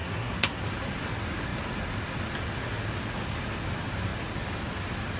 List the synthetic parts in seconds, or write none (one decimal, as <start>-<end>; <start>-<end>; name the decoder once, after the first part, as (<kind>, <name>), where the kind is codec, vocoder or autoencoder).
0.0-0.6 (codec, SNAC)